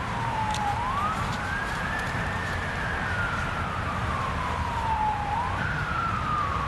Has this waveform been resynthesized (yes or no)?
yes